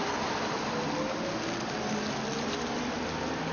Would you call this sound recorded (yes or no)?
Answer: yes